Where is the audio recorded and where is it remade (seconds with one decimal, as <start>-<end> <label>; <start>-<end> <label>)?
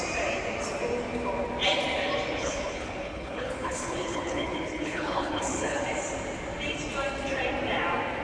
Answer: 0.0-2.4 recorded; 2.4-5.8 remade; 5.8-8.2 recorded